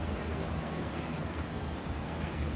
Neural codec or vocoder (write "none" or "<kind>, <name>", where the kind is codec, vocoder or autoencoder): codec, SNAC